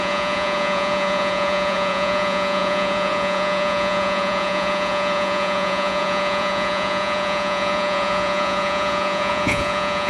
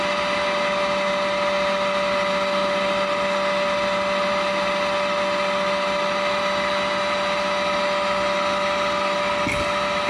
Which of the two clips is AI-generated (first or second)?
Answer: first